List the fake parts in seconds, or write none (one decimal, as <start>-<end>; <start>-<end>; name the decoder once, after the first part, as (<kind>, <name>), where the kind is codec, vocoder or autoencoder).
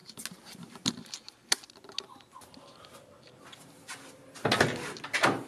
none